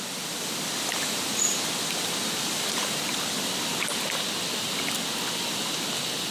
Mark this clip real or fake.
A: real